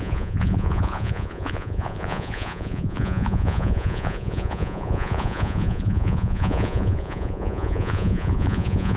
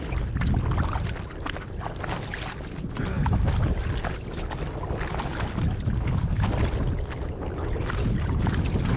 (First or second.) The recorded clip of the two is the second